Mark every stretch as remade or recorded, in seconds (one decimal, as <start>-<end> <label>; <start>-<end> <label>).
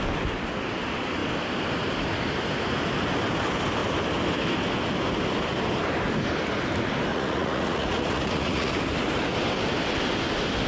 0.0-7.1 recorded; 7.1-8.7 remade; 8.7-10.7 recorded